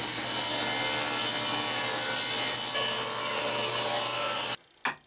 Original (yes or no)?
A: yes